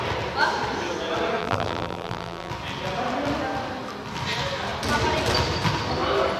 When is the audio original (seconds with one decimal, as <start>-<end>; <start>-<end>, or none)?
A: 0.0-1.4; 2.5-6.4